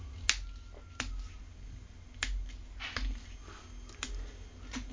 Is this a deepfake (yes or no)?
no